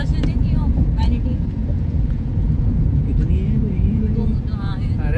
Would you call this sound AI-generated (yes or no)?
yes